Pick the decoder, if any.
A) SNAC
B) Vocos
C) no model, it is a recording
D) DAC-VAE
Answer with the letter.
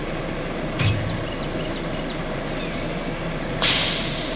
C